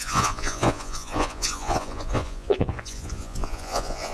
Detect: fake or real fake